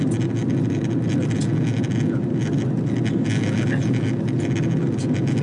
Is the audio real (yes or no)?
yes